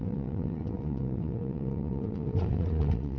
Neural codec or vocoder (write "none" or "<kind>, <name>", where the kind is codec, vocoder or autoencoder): vocoder, WaveNeXt